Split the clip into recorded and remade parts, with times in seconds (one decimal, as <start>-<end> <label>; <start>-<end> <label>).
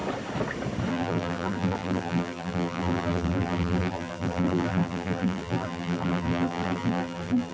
0.0-0.9 recorded; 0.9-7.5 remade